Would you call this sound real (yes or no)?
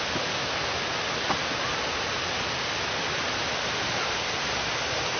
yes